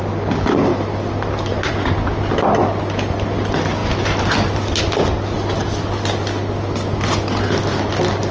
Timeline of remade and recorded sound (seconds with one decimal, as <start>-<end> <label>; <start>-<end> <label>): 0.0-8.3 recorded